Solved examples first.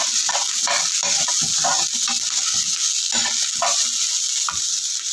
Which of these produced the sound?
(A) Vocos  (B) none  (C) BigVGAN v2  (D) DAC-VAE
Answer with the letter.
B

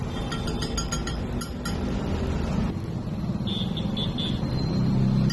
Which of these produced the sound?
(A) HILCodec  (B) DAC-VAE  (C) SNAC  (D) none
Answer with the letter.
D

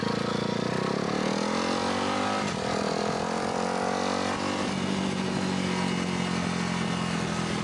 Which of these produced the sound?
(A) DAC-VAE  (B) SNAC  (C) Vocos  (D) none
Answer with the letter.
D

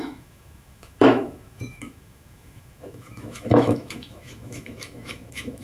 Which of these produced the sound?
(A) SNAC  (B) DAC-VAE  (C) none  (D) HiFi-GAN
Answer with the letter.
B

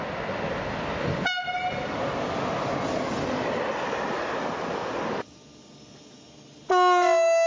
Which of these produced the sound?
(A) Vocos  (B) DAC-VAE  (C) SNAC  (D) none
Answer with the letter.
D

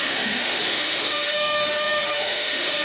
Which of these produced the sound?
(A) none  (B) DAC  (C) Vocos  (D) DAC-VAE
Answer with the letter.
D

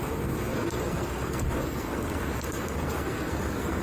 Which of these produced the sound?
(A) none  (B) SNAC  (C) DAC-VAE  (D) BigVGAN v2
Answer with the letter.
B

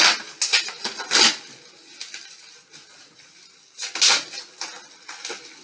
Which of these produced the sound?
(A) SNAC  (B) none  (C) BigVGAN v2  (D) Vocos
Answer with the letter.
B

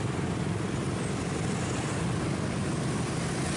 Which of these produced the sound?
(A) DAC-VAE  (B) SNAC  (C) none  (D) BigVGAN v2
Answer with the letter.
C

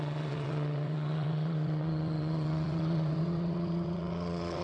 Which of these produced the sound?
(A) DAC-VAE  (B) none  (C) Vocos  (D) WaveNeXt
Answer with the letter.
D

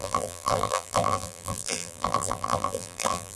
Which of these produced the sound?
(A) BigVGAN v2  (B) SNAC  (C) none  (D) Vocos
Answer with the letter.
A